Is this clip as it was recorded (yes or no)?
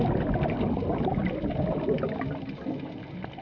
yes